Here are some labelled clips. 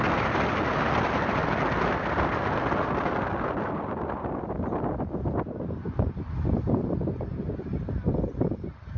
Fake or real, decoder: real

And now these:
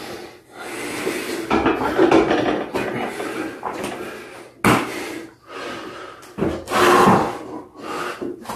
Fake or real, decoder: real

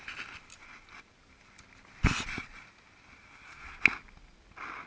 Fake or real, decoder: real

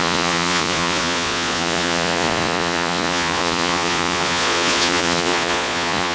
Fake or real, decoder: fake, vocoder, Vocos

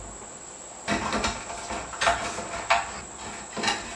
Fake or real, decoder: real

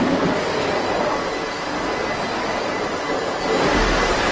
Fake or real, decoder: real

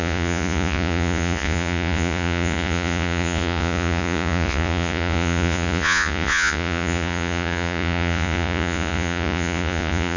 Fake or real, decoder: fake, vocoder, Vocos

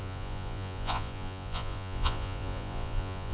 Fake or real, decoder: fake, vocoder, Vocos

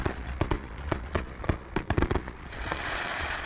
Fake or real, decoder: fake, vocoder, Vocos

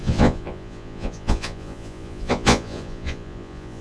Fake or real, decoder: fake, vocoder, Vocos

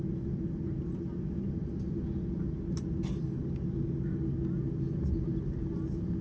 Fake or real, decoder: real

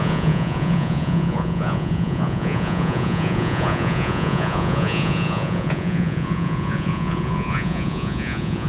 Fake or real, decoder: fake, vocoder, Vocos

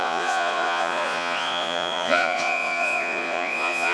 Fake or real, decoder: fake, vocoder, Vocos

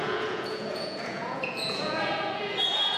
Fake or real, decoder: fake, vocoder, Vocos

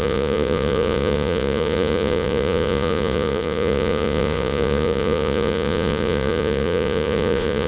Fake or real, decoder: fake, vocoder, Vocos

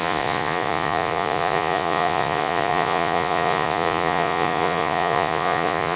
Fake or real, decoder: fake, vocoder, Vocos